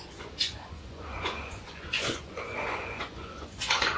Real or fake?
fake